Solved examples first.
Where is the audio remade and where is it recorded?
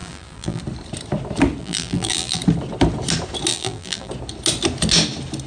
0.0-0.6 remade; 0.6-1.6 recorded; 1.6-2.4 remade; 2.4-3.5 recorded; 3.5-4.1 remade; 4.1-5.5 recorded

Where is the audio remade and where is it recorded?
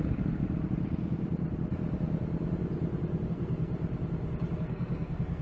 0.0-0.4 remade; 0.4-3.3 recorded; 3.3-3.7 remade; 3.7-4.6 recorded; 4.6-5.4 remade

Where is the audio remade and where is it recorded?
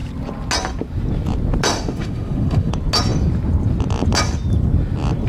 0.0-1.7 recorded; 1.7-2.7 remade; 2.7-5.3 recorded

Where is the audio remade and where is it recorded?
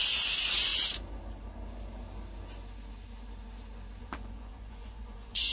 0.0-0.7 remade; 0.7-4.0 recorded; 4.0-5.5 remade